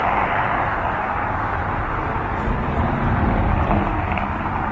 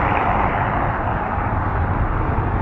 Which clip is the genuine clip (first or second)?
first